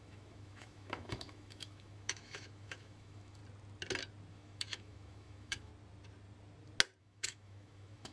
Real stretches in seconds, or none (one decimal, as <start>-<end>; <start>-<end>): 3.4-4.3; 5.7-7.0